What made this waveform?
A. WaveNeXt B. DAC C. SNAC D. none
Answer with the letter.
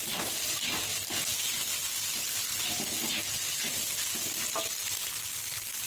D